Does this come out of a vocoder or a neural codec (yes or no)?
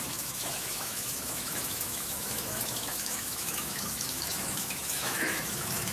yes